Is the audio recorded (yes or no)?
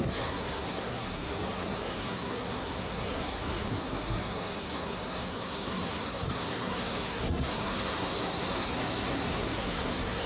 no